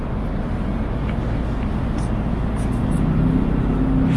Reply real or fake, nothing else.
real